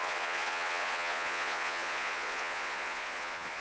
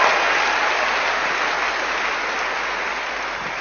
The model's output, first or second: first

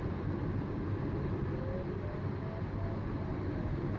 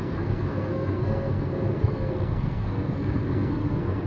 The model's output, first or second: second